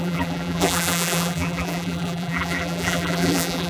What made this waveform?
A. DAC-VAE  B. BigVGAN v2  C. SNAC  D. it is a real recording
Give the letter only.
B